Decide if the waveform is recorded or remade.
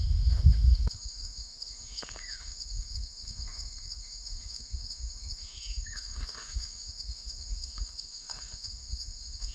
remade